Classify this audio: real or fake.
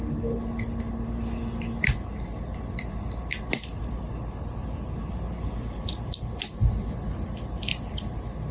real